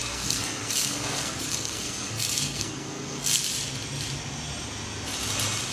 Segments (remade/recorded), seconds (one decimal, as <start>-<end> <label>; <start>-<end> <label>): 0.0-3.4 remade; 3.4-5.7 recorded